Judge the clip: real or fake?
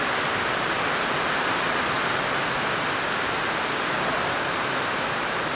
real